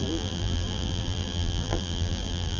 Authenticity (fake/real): fake